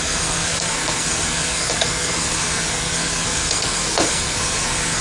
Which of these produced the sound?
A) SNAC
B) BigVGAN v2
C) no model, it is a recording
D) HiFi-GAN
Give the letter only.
A